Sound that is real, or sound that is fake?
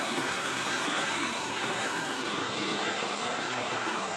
fake